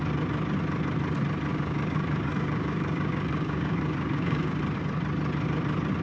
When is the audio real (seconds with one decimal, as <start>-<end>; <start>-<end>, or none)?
0.0-1.5; 4.6-6.0